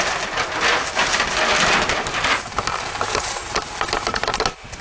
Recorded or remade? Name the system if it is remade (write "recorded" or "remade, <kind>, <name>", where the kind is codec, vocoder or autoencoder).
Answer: recorded